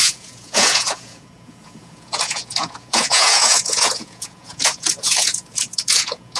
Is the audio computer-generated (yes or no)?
yes